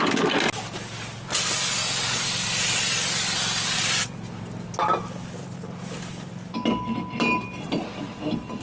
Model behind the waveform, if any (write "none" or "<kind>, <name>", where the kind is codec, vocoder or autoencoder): none